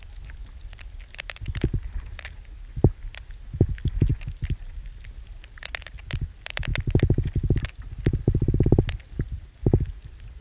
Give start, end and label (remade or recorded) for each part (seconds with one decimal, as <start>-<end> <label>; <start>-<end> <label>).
0.0-10.4 recorded